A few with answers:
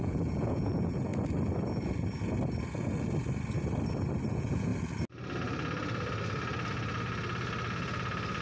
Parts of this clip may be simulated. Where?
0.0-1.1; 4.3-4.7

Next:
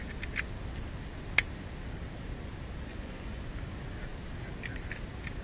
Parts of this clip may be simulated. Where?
2.9-3.4

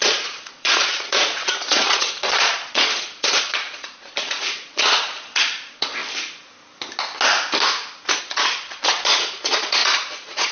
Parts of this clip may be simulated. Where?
0.0-6.0; 8.2-10.5

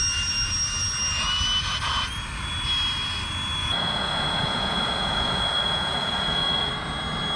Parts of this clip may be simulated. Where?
3.6-6.7

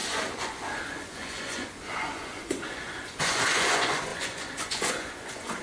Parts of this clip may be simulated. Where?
0.0-5.6

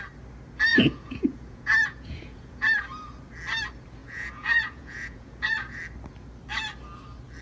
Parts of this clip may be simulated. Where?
0.7-2.8; 4.0-5.8